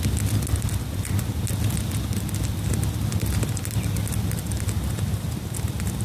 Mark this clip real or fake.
real